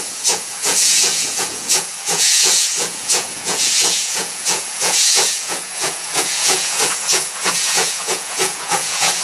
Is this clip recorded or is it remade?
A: remade